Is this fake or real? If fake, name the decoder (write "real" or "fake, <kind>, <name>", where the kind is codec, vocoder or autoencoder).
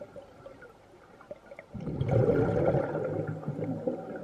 real